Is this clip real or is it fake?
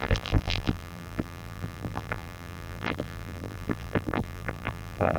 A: fake